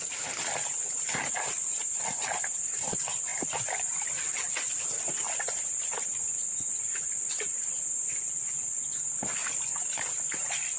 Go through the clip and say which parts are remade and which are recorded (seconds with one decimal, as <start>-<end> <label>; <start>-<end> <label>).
0.0-10.8 recorded